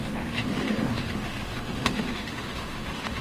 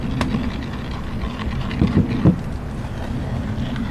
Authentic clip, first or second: second